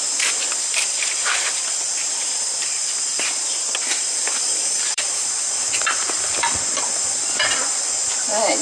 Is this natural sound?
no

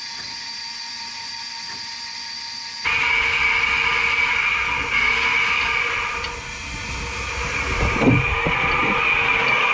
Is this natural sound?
yes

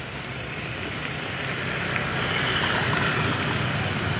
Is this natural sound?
yes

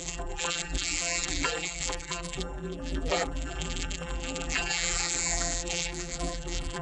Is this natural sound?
no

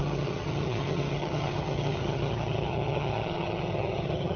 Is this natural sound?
no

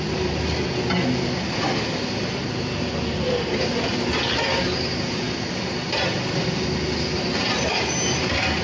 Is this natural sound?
yes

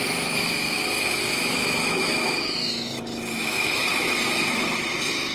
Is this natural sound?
no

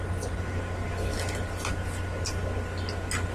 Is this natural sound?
yes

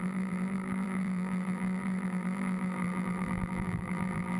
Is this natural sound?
no